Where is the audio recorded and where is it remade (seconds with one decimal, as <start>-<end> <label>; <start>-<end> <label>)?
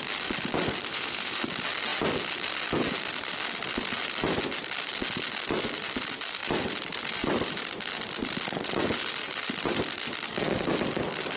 0.0-0.9 recorded; 0.9-1.4 remade; 1.4-11.4 recorded